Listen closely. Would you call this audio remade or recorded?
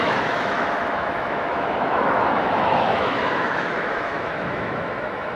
remade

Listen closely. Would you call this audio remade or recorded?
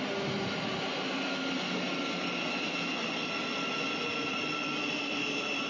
recorded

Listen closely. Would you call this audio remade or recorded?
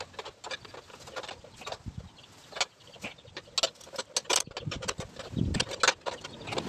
recorded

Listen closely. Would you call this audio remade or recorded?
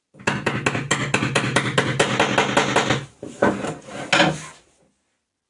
recorded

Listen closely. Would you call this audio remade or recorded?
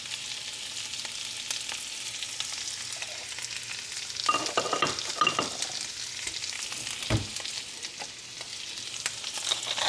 recorded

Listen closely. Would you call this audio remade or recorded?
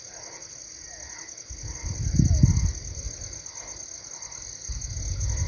recorded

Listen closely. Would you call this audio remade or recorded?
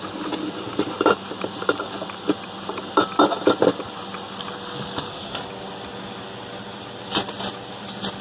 recorded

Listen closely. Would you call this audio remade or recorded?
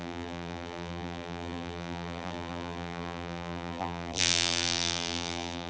remade